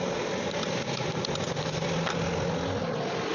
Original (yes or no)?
yes